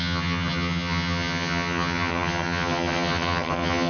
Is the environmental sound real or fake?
fake